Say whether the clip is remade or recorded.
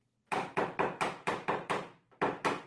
remade